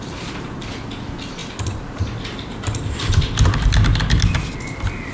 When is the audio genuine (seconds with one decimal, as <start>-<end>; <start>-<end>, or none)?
0.0-5.1